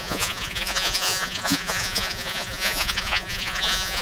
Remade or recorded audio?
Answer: remade